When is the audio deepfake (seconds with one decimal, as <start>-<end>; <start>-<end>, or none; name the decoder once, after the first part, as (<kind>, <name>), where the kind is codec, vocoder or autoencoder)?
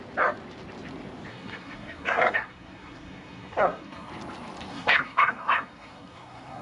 1.3-4.1 (codec, SNAC); 4.7-6.6